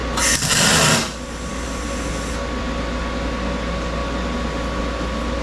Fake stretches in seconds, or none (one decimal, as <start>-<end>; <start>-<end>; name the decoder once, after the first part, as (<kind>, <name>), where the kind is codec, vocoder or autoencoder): none